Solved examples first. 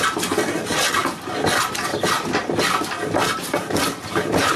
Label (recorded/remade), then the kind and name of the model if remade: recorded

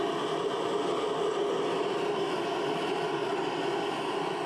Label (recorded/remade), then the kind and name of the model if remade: recorded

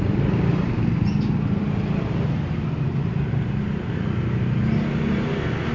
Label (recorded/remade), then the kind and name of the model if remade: recorded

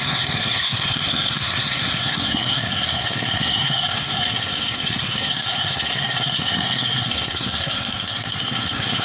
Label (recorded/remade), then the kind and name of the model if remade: remade, codec, SNAC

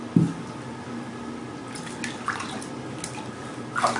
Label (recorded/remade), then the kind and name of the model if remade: recorded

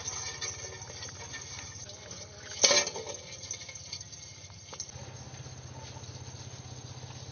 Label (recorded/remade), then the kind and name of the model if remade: recorded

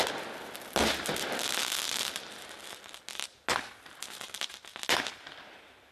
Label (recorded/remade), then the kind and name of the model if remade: recorded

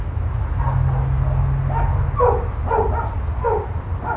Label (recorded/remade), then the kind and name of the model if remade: recorded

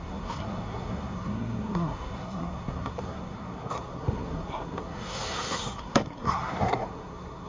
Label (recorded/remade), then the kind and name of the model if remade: remade, codec, SNAC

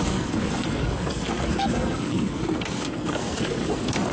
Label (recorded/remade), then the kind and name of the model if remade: remade, codec, SNAC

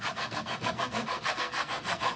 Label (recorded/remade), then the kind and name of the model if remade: remade, codec, SNAC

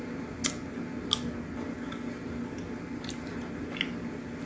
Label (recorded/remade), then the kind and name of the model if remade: recorded